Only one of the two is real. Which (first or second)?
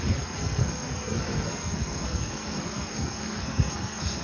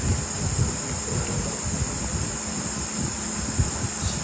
second